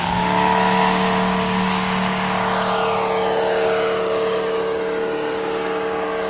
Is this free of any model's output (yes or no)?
no